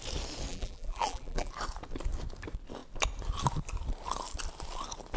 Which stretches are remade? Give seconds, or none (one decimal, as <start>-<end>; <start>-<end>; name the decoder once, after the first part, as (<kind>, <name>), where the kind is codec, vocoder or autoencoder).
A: 0.5-1.5 (vocoder, BigVGAN v2)